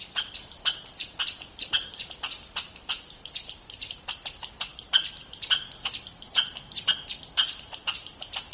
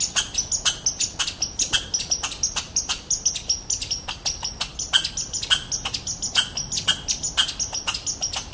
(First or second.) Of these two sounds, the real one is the second